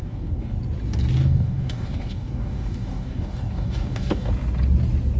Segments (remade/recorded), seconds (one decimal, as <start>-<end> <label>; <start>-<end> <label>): 0.0-0.6 remade; 0.6-1.2 recorded; 1.2-4.3 remade; 4.3-5.2 recorded